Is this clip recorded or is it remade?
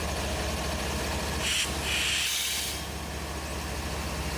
recorded